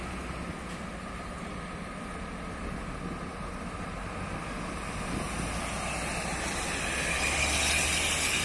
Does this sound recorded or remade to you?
recorded